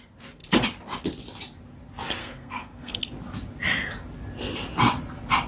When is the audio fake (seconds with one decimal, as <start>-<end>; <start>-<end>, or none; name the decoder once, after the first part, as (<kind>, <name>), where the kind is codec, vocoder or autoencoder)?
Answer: 2.2-3.0 (codec, SNAC)

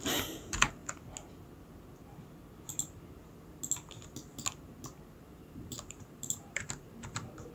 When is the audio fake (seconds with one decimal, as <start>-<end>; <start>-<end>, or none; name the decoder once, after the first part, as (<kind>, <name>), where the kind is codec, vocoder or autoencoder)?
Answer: 0.0-0.8 (vocoder, BigVGAN v2); 5.3-7.5

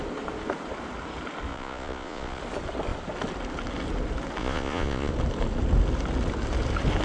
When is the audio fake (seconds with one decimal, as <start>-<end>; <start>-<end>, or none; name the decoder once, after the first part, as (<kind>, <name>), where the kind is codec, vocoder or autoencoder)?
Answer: 1.5-2.4 (vocoder, Vocos); 4.4-5.1

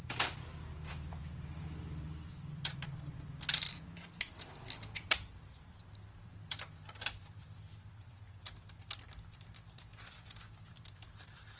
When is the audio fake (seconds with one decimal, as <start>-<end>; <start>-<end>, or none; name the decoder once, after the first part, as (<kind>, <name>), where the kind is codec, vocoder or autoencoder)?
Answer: 0.0-1.2 (vocoder, BigVGAN v2); 2.5-11.6

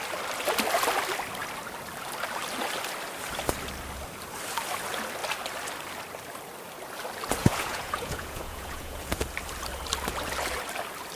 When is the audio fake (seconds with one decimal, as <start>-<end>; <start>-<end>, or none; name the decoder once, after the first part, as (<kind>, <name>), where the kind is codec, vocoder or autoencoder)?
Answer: 7.4-9.0 (vocoder, Vocos)

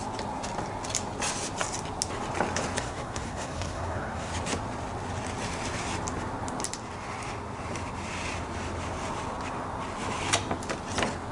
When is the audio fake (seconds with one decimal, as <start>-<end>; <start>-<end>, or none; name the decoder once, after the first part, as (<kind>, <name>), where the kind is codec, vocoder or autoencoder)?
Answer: 2.8-4.3 (codec, SNAC)

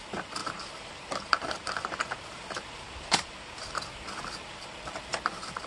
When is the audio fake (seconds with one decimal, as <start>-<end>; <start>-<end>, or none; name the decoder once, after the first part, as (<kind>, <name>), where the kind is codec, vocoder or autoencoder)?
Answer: 0.4-3.8 (vocoder, BigVGAN v2)